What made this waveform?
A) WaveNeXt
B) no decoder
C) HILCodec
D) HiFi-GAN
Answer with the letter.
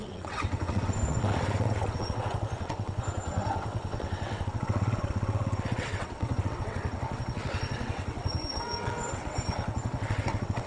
A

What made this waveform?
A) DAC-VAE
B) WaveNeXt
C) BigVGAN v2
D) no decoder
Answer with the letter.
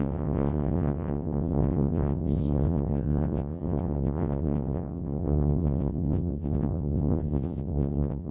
B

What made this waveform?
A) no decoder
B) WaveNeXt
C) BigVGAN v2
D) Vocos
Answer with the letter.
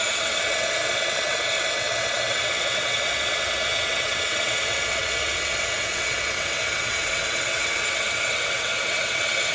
B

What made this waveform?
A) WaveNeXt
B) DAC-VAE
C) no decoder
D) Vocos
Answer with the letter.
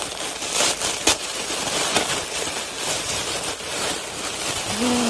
C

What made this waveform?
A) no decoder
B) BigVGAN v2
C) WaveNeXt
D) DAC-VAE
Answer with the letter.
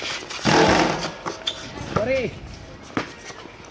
A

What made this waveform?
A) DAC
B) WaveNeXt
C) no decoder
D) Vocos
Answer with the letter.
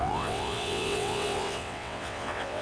B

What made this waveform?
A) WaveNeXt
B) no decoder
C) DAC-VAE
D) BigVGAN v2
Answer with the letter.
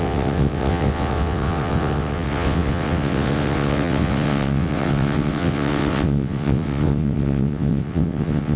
A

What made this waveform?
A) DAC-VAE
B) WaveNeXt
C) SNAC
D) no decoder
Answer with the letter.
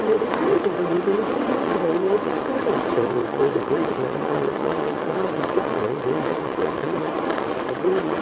B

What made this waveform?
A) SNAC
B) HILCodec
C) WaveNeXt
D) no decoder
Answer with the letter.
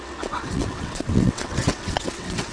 C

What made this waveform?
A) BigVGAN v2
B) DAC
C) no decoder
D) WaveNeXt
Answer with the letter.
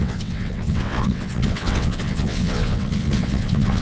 D